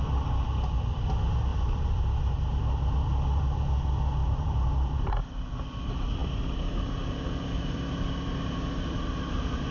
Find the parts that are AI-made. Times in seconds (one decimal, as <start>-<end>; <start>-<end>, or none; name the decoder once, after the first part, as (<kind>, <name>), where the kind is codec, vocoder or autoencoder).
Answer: 1.5-2.0 (vocoder, BigVGAN v2); 4.2-5.2